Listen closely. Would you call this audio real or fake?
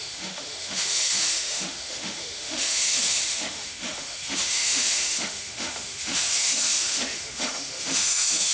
fake